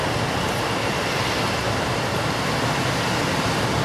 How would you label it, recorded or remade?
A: recorded